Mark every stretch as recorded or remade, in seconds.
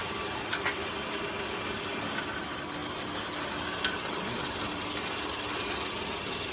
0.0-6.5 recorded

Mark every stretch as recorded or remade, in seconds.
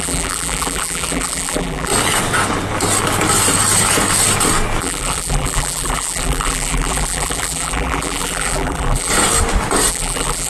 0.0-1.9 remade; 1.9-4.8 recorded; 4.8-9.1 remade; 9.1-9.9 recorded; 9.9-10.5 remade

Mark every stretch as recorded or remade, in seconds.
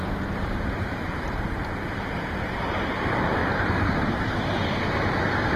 0.0-1.5 remade; 1.5-3.4 recorded; 3.4-4.4 remade; 4.4-5.6 recorded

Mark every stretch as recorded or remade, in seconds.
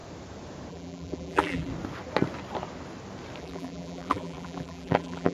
0.0-0.7 recorded; 0.7-1.7 remade; 1.7-3.4 recorded; 3.4-5.3 remade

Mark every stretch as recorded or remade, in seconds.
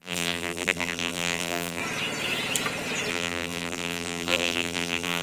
0.0-1.8 remade; 1.8-3.1 recorded; 3.1-5.2 remade